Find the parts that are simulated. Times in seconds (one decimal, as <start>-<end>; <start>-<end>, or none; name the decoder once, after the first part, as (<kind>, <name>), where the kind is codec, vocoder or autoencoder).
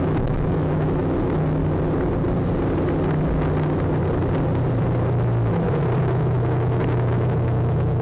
0.0-1.6 (autoencoder, DAC-VAE); 6.0-8.0